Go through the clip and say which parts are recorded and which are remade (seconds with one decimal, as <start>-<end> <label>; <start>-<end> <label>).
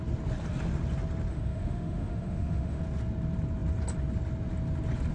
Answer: 0.0-1.3 recorded; 1.3-2.8 remade; 2.8-5.1 recorded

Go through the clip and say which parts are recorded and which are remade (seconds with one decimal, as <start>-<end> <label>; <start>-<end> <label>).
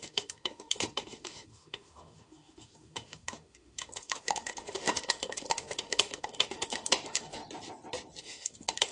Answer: 0.0-7.4 remade; 7.4-8.2 recorded; 8.2-8.9 remade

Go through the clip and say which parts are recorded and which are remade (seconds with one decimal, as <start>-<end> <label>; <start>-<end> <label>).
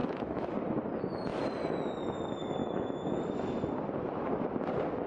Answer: 0.0-0.5 remade; 0.5-2.6 recorded; 2.6-3.2 remade; 3.2-5.1 recorded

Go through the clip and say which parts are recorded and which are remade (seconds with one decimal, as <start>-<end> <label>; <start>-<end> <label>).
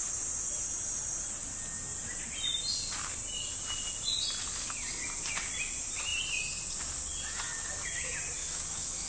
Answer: 0.0-8.4 recorded; 8.4-9.1 remade